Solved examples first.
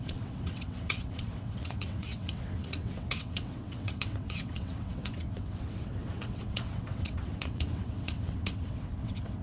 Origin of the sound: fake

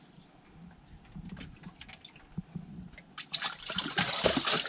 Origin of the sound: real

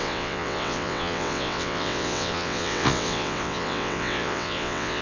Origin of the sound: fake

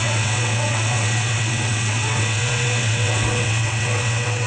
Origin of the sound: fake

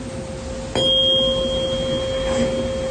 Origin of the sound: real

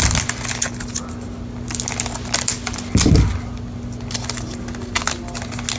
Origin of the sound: real